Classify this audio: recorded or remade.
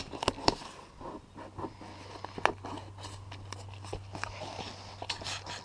recorded